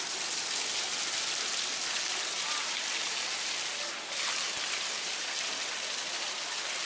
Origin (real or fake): real